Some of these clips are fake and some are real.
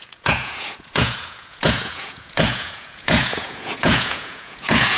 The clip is fake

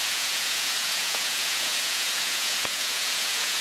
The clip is fake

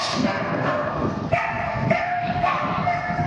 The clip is fake